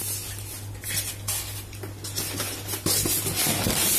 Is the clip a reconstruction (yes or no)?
no